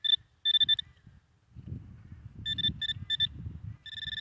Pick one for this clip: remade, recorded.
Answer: recorded